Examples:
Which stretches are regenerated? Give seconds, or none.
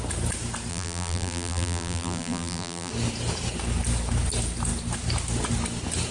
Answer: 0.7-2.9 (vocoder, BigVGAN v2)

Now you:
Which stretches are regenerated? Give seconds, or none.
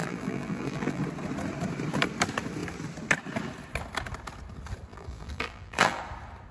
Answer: 0.0-1.0 (vocoder, BigVGAN v2); 4.9-6.0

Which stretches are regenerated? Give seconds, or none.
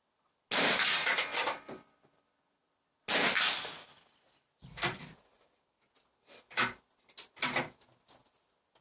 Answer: none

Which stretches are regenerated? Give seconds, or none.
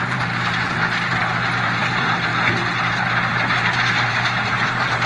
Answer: 0.0-2.3 (vocoder, BigVGAN v2); 3.9-5.1